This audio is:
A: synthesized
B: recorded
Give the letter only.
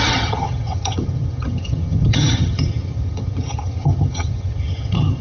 A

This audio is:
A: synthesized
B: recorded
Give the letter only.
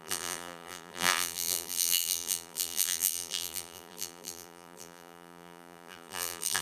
A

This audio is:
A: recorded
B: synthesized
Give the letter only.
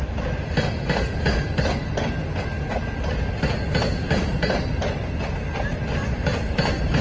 A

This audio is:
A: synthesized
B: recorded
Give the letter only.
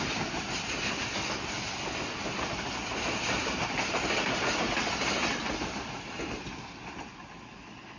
B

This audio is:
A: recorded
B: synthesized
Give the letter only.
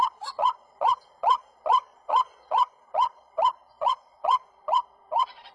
B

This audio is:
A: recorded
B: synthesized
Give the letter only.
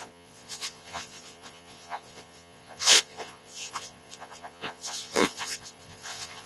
B